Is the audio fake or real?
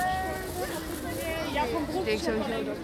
real